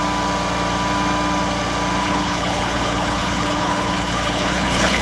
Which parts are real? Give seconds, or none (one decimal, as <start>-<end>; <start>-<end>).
0.0-2.0